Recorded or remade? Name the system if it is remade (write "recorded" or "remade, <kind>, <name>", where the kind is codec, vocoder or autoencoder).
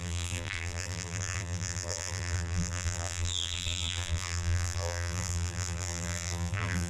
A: remade, vocoder, BigVGAN v2